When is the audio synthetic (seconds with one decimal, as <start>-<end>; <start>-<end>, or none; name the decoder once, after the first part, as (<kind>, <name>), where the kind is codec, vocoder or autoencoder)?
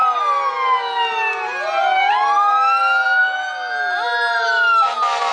none